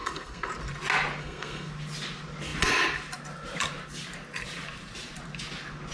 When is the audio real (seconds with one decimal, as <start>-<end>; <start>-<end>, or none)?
0.5-1.2; 1.7-5.9